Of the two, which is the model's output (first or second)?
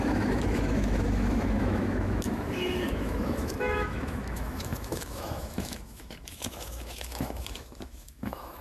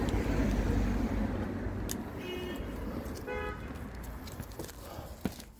first